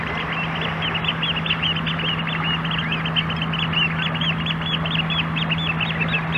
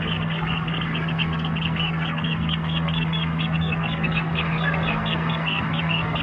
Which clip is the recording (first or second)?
first